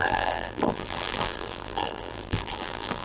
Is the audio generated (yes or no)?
yes